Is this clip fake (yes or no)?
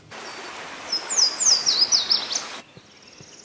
no